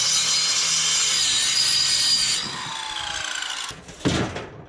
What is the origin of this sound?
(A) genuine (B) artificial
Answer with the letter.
A